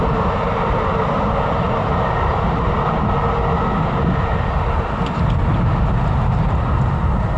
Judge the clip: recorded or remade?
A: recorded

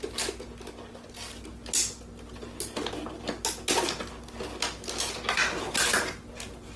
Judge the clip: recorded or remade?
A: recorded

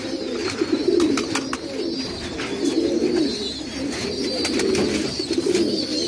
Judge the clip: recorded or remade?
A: recorded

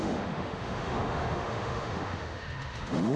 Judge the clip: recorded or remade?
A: remade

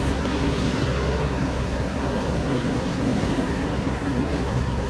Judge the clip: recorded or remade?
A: remade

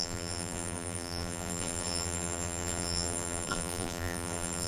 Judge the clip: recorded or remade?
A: remade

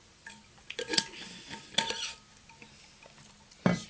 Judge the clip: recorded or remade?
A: recorded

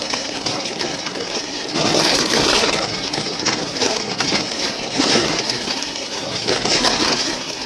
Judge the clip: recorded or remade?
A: remade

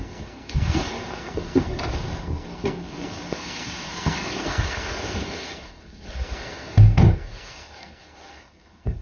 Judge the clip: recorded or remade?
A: remade